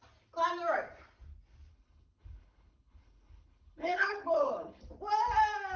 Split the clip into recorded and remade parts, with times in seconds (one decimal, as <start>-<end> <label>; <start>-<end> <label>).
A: 0.0-1.7 recorded; 1.7-4.9 remade; 4.9-5.8 recorded